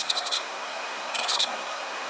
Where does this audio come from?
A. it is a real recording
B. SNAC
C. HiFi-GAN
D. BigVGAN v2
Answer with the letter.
B